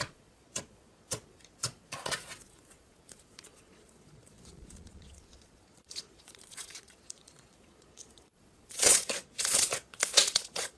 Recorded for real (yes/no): no